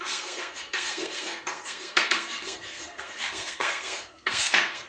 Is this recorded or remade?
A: remade